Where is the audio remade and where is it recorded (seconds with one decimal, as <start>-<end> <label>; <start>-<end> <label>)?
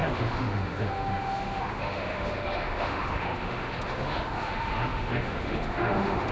0.0-6.3 remade